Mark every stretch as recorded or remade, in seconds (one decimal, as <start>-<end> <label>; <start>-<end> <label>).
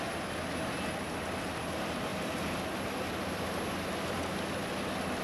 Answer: 0.0-5.2 recorded